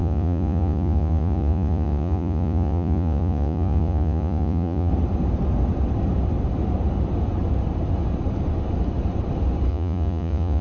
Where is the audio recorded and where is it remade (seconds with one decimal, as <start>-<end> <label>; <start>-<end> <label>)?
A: 0.0-4.9 remade; 4.9-9.7 recorded; 9.7-10.6 remade